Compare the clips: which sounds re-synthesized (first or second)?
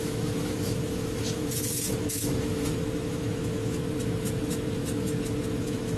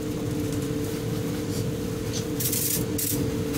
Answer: first